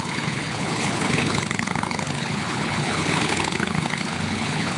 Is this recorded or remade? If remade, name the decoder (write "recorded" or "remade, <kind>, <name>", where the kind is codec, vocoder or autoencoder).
remade, codec, HILCodec